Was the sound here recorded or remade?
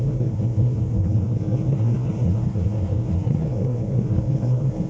remade